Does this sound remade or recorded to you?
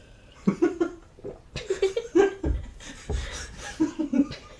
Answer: remade